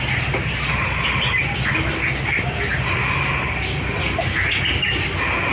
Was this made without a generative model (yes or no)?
yes